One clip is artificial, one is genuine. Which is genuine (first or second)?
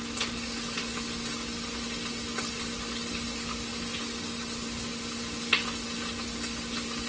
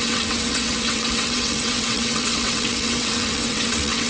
first